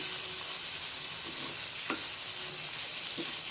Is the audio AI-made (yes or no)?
no